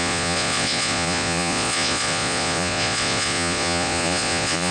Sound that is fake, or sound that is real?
fake